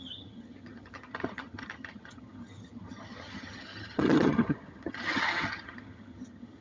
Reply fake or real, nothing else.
fake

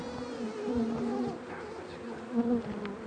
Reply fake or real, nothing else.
real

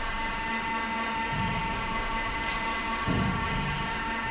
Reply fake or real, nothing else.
fake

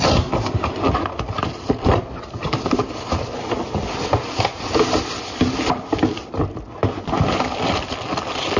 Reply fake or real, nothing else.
real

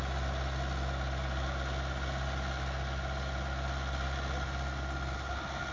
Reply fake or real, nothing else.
real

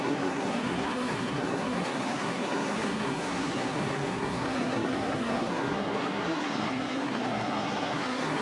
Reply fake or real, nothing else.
fake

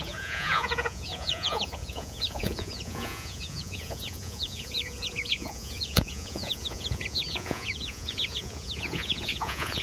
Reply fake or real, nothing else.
fake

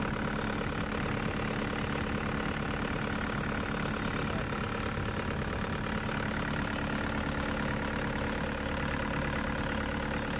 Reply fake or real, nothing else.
real